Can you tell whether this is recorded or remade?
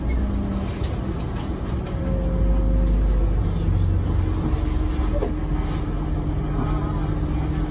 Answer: recorded